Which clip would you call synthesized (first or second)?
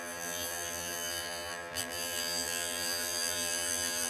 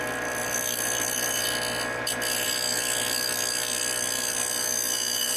first